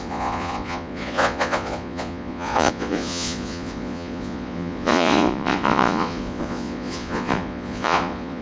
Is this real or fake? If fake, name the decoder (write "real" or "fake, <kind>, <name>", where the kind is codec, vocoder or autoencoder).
fake, vocoder, Vocos